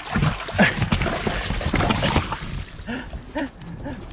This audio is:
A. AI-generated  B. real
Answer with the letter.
B